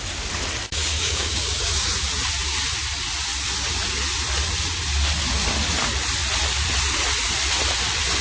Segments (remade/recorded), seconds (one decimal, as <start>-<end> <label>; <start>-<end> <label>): 0.0-0.7 recorded; 0.7-1.9 remade; 1.9-8.2 recorded

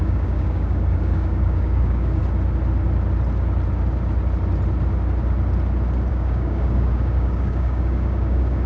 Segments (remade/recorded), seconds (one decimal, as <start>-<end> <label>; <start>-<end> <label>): 0.0-2.2 remade; 2.2-6.1 recorded; 6.1-8.7 remade